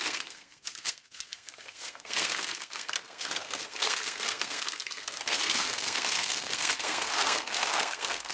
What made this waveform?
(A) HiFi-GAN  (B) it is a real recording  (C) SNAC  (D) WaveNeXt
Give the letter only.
C